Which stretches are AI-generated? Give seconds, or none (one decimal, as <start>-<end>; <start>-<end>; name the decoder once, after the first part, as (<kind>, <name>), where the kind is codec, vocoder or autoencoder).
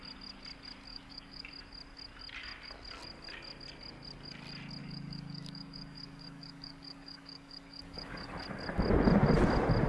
0.9-1.5 (codec, DAC); 4.8-8.3